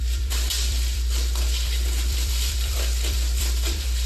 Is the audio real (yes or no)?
no